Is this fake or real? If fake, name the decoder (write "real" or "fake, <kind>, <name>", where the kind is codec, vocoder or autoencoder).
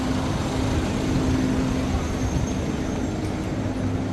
real